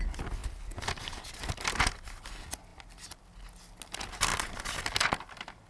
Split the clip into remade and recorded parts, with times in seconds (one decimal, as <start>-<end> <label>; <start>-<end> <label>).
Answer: 0.0-5.7 recorded